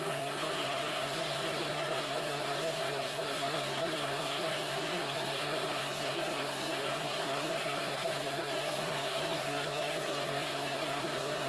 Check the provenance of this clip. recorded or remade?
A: remade